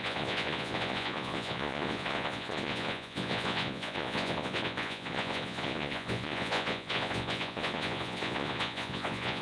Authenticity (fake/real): fake